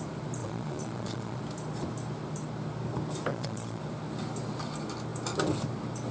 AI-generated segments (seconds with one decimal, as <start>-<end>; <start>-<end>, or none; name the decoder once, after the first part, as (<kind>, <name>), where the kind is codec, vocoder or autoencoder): 0.4-1.4 (vocoder, Vocos); 3.3-3.8